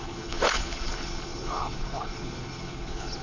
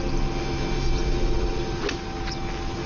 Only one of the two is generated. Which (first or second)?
first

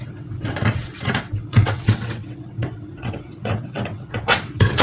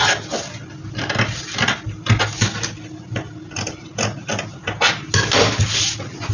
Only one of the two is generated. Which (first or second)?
first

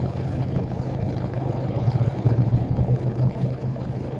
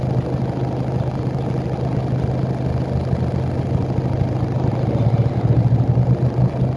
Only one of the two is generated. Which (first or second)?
first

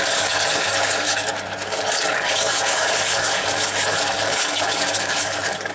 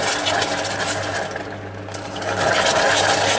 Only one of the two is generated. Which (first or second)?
first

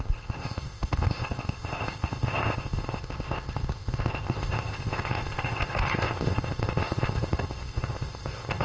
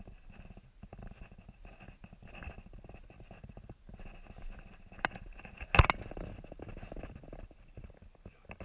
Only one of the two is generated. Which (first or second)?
first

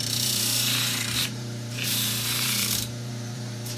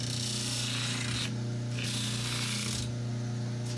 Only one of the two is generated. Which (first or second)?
first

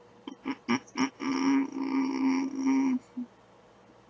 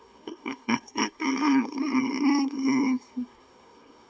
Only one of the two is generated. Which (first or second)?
second